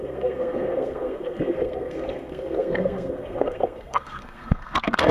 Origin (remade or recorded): remade